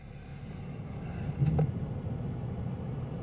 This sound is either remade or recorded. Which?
recorded